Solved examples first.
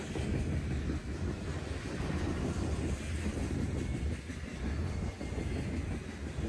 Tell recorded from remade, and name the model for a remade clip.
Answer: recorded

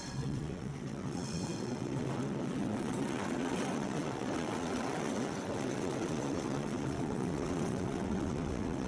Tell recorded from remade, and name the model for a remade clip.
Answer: remade, vocoder, WaveNeXt